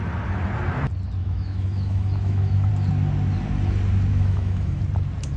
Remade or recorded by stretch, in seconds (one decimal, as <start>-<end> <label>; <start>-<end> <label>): 0.0-1.2 recorded; 1.2-2.7 remade; 2.7-4.1 recorded; 4.1-4.8 remade; 4.8-5.4 recorded